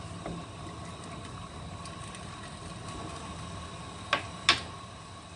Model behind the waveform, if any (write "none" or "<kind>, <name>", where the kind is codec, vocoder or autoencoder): none